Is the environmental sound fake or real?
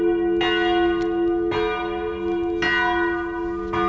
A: real